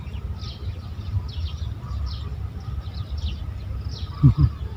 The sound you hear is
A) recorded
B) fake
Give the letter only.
A